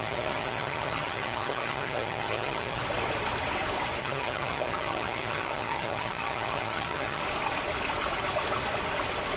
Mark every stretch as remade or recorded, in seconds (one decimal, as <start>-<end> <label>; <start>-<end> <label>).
0.0-2.8 remade; 2.8-4.0 recorded; 4.0-7.2 remade; 7.2-9.4 recorded